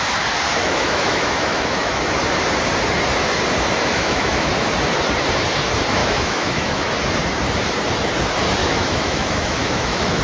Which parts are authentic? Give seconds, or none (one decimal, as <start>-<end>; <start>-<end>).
0.0-0.6; 2.0-3.9; 4.5-6.0; 6.9-8.6

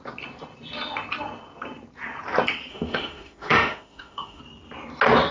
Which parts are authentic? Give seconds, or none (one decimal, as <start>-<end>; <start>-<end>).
0.0-2.7; 4.4-5.3

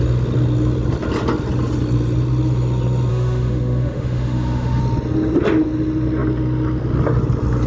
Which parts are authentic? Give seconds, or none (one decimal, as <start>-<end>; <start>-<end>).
0.0-3.1; 4.8-7.7

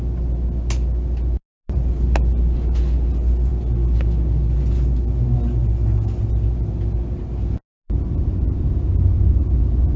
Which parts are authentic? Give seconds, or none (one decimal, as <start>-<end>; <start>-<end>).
0.0-10.0

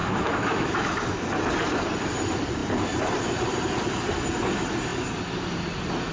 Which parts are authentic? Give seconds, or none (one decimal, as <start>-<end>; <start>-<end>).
0.9-6.1